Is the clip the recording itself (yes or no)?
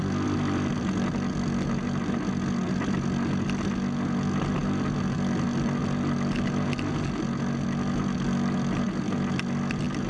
yes